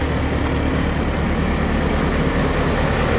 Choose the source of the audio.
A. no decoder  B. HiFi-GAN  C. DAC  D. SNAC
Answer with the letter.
A